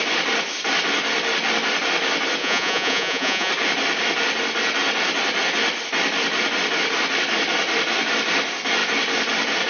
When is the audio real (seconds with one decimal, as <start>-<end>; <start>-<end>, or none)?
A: 0.0-2.4; 3.5-9.7